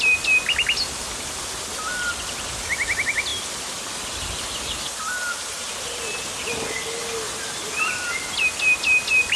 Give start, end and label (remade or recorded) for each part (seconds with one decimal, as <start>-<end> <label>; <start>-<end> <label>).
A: 0.0-9.4 recorded